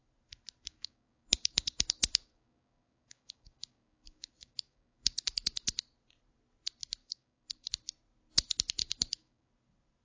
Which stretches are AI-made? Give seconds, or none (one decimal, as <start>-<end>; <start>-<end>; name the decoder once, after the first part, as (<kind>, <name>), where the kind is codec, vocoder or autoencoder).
0.7-5.8 (codec, DAC); 7.0-7.7; 8.8-9.5